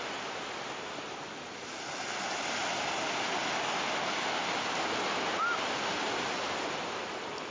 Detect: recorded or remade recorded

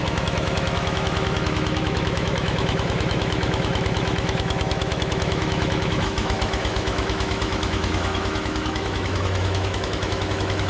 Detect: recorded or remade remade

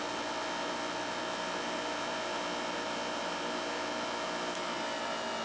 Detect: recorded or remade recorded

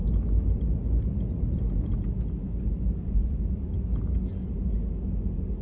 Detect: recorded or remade recorded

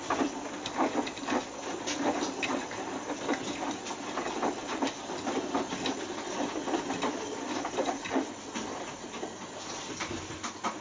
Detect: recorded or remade recorded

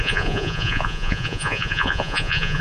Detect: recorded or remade remade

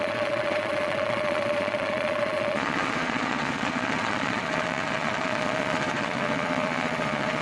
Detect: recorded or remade remade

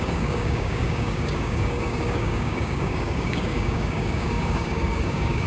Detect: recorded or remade remade